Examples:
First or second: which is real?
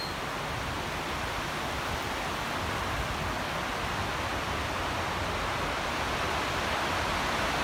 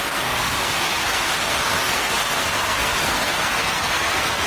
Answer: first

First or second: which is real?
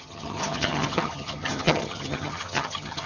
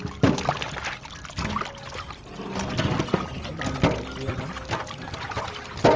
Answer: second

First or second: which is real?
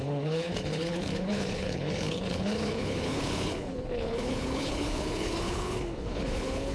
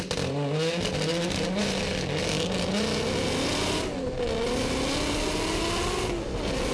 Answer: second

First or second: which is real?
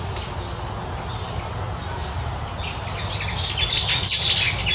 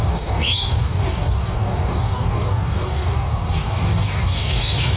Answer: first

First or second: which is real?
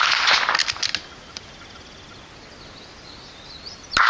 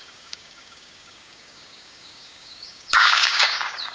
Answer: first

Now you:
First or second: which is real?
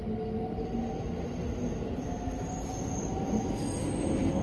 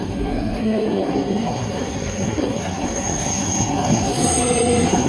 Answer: first